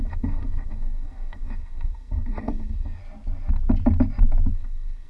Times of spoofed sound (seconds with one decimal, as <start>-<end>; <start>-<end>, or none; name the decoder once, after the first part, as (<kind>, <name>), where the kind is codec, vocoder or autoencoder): 0.0-3.0 (codec, SNAC); 4.5-5.1